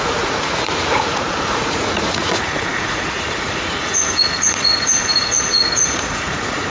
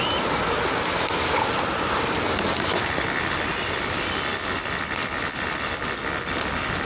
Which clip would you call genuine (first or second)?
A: second